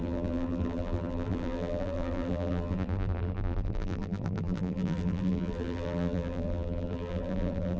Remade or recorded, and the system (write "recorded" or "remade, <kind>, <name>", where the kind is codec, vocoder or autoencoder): remade, vocoder, BigVGAN v2